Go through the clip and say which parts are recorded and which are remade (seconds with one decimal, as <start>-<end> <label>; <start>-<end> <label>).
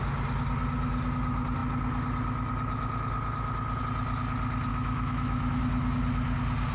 0.0-4.7 recorded; 4.7-5.6 remade; 5.6-6.7 recorded